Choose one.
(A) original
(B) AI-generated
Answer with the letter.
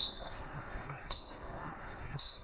B